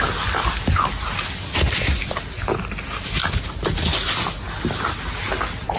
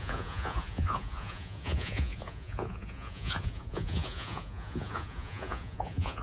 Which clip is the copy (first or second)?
second